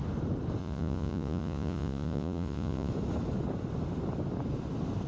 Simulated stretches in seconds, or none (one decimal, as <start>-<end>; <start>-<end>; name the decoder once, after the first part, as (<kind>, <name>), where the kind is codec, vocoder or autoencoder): 0.6-2.9 (vocoder, Vocos)